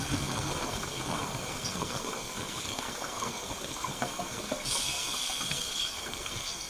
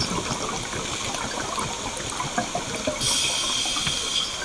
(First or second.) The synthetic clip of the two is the first